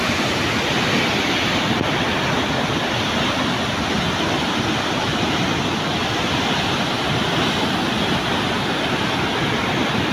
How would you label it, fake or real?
real